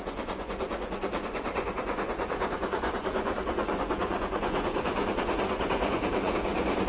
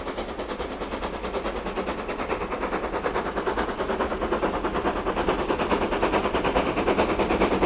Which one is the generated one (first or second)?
first